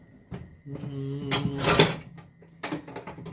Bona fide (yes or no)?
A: yes